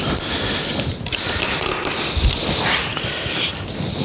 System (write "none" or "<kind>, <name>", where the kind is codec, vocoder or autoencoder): none